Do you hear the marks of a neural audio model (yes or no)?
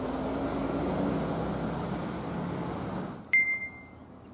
no